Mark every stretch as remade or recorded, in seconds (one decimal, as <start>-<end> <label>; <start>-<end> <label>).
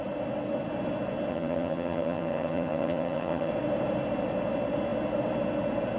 0.0-1.3 recorded; 1.3-3.5 remade; 3.5-6.0 recorded